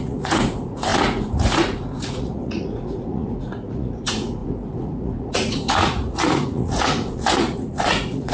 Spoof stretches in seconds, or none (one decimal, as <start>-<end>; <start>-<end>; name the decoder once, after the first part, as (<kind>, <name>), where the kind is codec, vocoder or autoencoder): 0.0-8.3 (vocoder, Vocos)